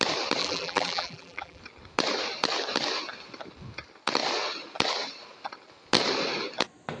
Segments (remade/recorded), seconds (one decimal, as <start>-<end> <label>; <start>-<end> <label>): 0.0-0.4 recorded; 0.4-1.6 remade; 1.6-7.0 recorded